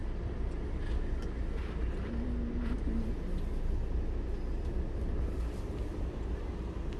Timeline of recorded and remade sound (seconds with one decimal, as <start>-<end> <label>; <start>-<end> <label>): 0.0-7.0 recorded